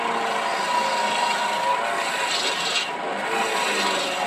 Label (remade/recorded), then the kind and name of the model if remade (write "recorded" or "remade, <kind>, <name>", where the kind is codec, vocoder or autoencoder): recorded